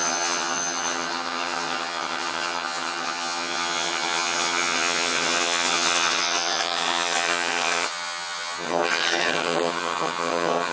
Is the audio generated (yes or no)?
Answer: yes